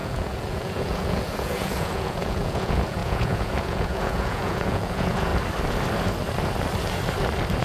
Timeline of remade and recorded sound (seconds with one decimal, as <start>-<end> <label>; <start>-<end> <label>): 0.0-5.3 remade; 5.3-7.6 recorded